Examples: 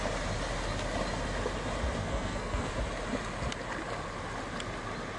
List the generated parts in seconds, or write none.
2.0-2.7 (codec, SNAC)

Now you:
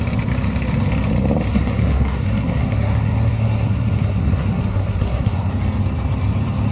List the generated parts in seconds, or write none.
1.5-5.5 (codec, SNAC)